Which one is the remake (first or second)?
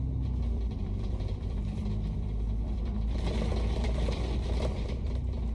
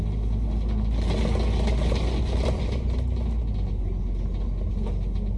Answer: first